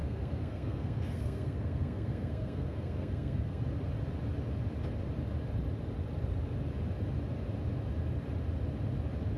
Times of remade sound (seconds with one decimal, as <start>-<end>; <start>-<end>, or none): 0.0-3.6